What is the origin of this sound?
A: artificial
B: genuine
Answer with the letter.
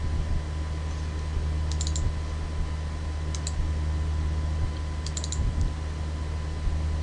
B